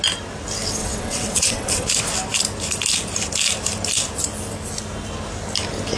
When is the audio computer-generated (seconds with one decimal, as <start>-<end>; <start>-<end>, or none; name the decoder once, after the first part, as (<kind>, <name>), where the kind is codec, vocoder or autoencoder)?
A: 0.8-1.9 (vocoder, WaveNeXt)